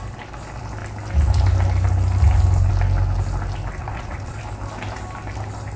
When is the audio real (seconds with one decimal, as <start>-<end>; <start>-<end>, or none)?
0.0-3.8; 4.4-5.8